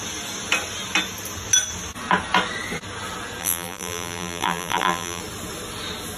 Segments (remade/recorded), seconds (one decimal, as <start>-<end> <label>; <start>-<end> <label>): 0.0-3.4 recorded; 3.4-5.2 remade; 5.2-6.2 recorded